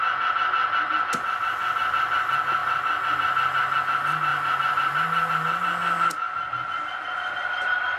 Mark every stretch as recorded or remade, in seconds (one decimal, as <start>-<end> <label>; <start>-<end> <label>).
0.0-4.3 recorded; 4.3-5.3 remade; 5.3-8.0 recorded

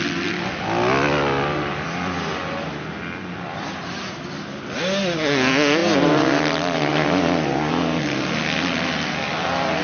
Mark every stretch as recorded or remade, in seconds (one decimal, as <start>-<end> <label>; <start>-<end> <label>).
0.0-5.8 recorded; 5.8-6.9 remade; 6.9-9.8 recorded

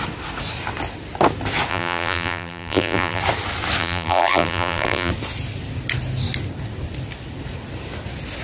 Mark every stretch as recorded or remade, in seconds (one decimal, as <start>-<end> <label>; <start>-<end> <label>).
0.0-1.7 recorded; 1.7-3.2 remade; 3.2-3.8 recorded; 3.8-5.1 remade; 5.1-8.4 recorded

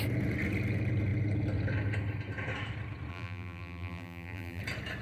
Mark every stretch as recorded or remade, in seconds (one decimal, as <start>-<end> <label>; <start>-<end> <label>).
0.0-3.1 recorded; 3.1-4.6 remade; 4.6-5.0 recorded

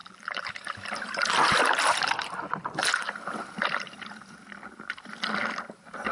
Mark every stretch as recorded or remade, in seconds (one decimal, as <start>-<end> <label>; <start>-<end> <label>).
0.0-0.5 remade; 0.5-6.1 recorded

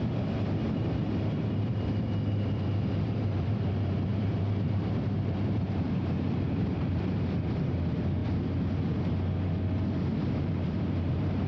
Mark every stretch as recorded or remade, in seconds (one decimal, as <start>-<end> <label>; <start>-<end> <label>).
0.0-8.2 remade; 8.2-10.3 recorded; 10.3-11.5 remade